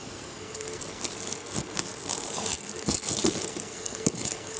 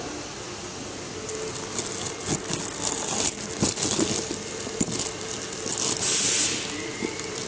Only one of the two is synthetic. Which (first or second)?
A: first